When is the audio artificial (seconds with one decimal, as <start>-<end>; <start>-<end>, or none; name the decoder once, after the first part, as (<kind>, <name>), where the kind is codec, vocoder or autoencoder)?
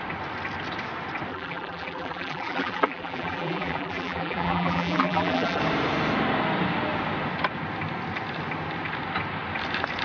1.3-5.6 (vocoder, BigVGAN v2)